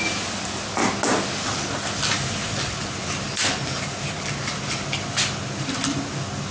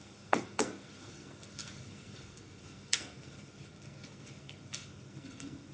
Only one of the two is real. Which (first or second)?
first